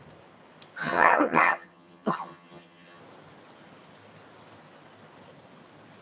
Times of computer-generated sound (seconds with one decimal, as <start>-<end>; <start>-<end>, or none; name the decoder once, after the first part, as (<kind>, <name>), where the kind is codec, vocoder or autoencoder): 0.8-3.0 (vocoder, HiFi-GAN)